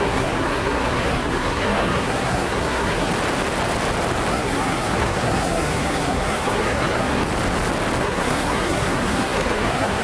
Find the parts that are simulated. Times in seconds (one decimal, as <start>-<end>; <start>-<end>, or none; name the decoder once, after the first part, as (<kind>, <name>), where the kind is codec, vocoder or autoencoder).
0.0-3.1 (codec, SNAC); 4.3-7.2; 8.0-10.0